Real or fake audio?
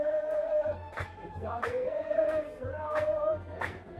fake